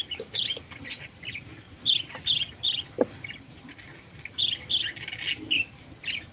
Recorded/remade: recorded